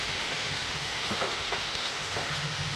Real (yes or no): no